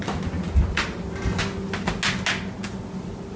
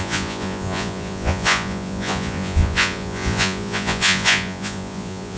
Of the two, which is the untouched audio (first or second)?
first